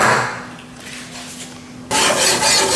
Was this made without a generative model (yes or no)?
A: yes